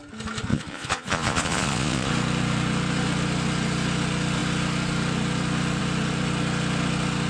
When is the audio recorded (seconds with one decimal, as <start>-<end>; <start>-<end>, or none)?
0.0-0.5; 2.1-7.3